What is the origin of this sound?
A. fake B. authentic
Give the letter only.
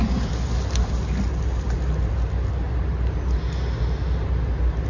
B